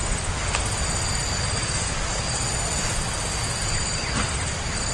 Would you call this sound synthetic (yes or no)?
no